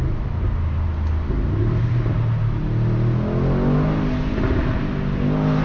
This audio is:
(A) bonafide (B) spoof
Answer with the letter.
A